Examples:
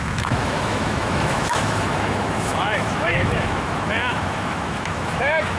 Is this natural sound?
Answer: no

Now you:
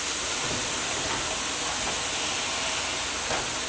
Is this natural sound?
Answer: yes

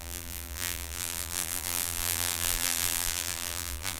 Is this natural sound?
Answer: no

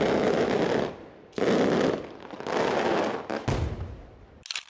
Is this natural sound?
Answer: yes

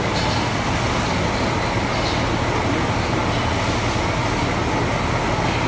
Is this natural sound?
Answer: yes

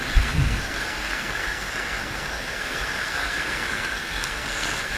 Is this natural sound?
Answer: no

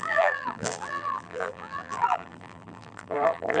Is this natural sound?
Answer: no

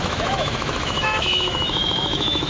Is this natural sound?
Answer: no